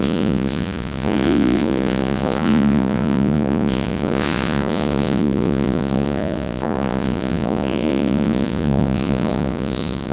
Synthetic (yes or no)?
yes